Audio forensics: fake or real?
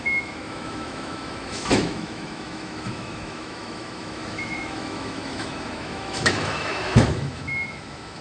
fake